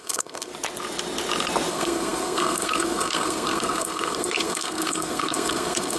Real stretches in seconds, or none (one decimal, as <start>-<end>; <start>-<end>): 0.5-1.7